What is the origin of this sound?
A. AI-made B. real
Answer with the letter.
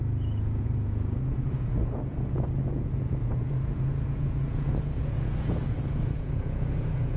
A